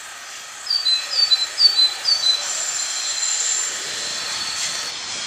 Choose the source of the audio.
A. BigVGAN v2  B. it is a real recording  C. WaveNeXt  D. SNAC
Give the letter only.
A